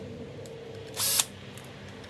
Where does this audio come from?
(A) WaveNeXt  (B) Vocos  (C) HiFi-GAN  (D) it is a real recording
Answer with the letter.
D